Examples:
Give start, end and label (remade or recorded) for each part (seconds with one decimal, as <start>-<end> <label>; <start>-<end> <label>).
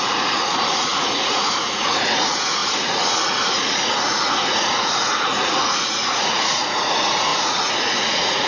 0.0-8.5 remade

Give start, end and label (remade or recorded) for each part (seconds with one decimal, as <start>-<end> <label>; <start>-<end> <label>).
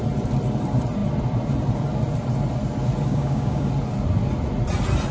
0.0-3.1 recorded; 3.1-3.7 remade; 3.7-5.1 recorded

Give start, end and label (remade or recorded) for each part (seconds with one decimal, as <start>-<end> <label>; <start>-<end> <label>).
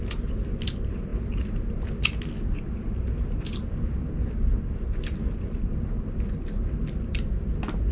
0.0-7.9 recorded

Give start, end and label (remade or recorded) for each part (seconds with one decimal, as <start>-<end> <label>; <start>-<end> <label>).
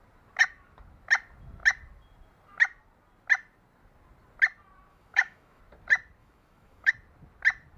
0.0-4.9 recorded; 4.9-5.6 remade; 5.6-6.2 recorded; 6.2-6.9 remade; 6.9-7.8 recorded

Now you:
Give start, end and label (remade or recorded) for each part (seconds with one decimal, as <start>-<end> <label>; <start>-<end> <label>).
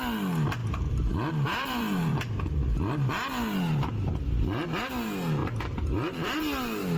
0.0-0.6 recorded; 0.6-1.1 remade; 1.1-1.5 recorded; 1.5-2.2 remade; 2.2-5.4 recorded; 5.4-6.4 remade; 6.4-7.0 recorded